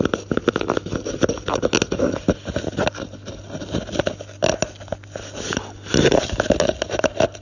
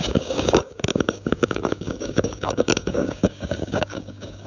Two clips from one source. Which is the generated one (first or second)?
second